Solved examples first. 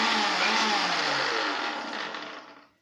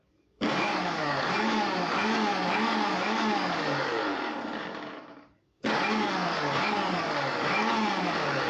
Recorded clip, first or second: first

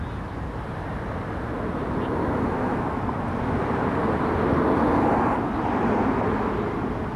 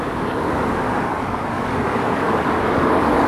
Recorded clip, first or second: first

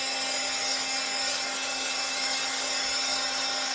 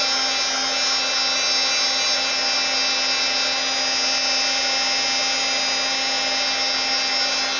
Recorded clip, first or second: second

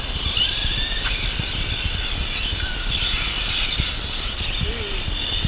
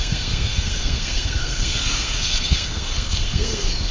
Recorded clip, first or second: first